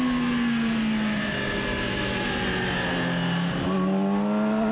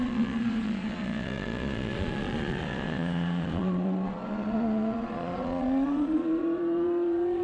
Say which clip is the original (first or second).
first